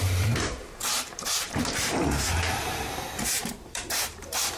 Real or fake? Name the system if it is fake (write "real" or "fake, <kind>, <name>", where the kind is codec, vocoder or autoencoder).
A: fake, vocoder, BigVGAN v2